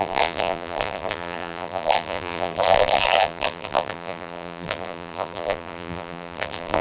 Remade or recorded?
remade